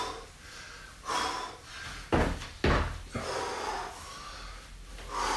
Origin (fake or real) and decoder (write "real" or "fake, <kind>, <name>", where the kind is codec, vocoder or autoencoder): real